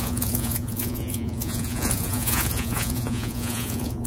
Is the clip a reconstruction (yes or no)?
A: yes